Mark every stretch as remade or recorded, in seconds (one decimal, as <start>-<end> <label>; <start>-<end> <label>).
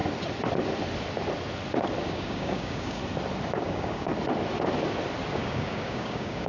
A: 0.0-2.1 recorded; 2.1-3.0 remade; 3.0-3.6 recorded; 3.6-4.1 remade; 4.1-5.3 recorded; 5.3-6.5 remade